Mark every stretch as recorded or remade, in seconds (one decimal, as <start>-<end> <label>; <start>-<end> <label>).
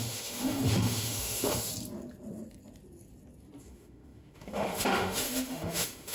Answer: 0.0-1.7 remade; 1.7-3.6 recorded; 3.6-6.1 remade